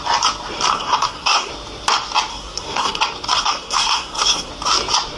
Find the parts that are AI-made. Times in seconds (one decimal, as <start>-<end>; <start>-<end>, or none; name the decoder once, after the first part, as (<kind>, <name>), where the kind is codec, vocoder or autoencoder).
0.7-1.5 (codec, SNAC); 2.3-3.0; 3.4-4.5